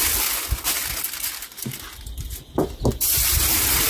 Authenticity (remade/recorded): recorded